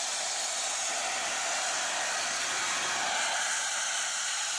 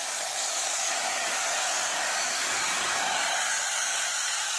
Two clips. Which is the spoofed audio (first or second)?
second